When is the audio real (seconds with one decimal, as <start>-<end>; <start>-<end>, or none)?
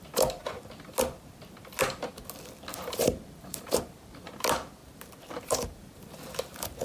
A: 0.0-2.7; 4.3-4.8; 6.0-6.8